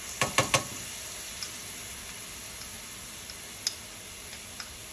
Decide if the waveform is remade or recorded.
recorded